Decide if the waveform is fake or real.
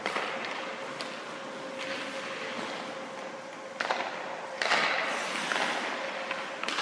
real